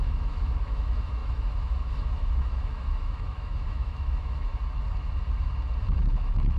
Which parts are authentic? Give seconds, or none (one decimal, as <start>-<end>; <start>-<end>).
4.5-5.8